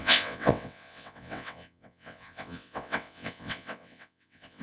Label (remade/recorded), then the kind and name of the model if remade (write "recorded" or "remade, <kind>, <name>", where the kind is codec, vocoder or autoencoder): remade, vocoder, WaveNeXt